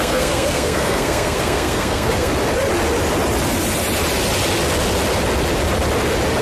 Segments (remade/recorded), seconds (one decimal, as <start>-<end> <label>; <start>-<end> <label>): 0.0-2.3 remade; 2.3-6.4 recorded